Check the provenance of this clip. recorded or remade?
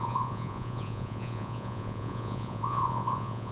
remade